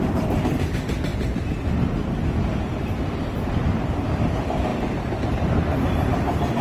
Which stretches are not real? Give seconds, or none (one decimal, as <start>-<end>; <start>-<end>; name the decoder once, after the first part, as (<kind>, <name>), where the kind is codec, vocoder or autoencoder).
0.0-4.7 (vocoder, BigVGAN v2); 5.2-6.6